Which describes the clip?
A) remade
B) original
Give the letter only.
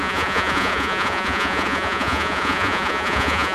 A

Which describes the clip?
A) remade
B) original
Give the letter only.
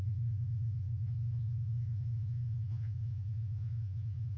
A